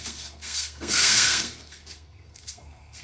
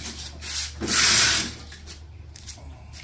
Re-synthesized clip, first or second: first